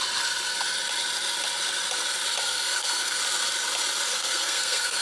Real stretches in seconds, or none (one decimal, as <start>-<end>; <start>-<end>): 0.0-2.4; 3.2-4.1